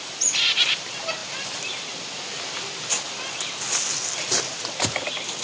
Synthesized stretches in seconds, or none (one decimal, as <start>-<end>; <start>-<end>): none